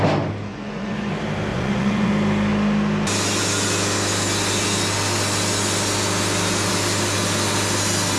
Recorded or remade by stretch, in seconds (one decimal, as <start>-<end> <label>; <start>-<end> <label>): 0.0-0.5 recorded; 0.5-1.1 remade; 1.1-1.5 recorded; 1.5-2.1 remade; 2.1-8.2 recorded